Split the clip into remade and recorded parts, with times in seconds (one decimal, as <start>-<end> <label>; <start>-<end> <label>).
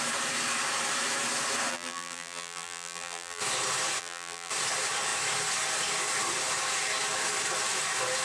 0.0-1.7 recorded; 1.7-3.4 remade; 3.4-4.0 recorded; 4.0-4.5 remade; 4.5-8.2 recorded